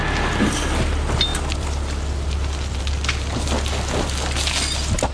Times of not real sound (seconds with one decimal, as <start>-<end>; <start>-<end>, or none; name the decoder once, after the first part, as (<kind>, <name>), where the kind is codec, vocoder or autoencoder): none